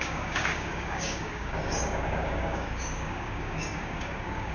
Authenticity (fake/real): fake